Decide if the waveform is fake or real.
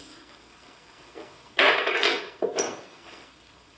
fake